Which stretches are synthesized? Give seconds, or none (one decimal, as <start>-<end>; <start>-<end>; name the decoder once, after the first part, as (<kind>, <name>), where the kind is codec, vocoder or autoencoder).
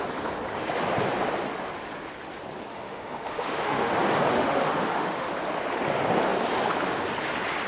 2.7-3.9 (autoencoder, DAC-VAE); 4.3-5.3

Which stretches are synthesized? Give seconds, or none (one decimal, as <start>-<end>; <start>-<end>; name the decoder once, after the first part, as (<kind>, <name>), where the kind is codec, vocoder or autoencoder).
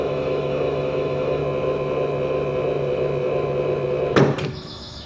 0.0-1.4 (autoencoder, DAC-VAE); 4.5-5.1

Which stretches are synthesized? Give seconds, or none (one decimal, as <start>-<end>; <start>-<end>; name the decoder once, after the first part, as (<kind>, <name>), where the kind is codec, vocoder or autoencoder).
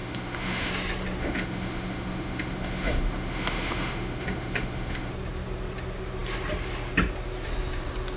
0.0-0.7 (autoencoder, DAC-VAE); 1.2-5.1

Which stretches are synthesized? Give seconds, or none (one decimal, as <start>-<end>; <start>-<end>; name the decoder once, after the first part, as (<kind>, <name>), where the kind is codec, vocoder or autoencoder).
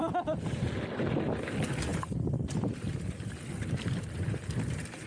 none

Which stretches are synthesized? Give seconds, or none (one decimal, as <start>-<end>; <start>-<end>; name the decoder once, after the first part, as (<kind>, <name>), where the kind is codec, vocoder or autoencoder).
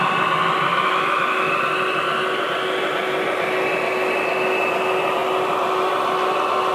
0.7-1.5 (autoencoder, DAC-VAE)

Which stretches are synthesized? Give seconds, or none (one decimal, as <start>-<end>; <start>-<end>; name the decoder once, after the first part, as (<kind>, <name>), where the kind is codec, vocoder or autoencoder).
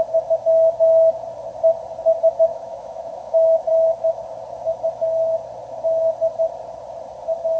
2.5-3.7 (autoencoder, DAC-VAE)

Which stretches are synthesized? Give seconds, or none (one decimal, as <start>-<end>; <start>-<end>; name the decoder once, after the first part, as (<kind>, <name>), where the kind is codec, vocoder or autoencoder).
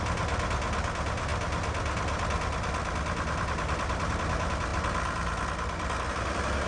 none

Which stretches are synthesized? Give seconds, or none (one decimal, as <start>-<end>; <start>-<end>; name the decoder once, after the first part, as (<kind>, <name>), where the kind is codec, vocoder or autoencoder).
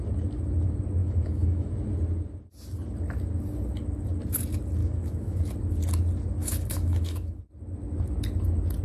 1.0-1.7 (autoencoder, DAC-VAE); 4.8-5.4; 6.4-7.4